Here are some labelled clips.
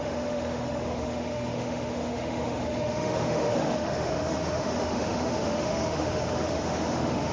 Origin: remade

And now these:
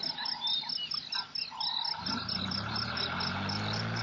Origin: recorded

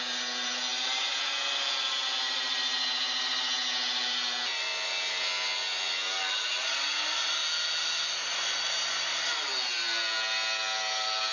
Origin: recorded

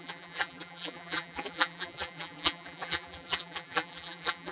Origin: remade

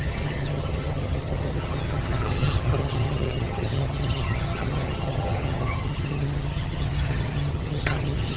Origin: remade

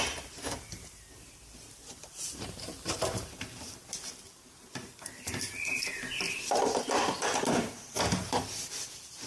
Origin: remade